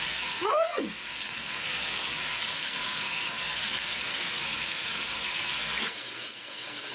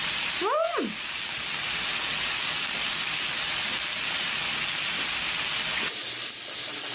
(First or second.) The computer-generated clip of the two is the first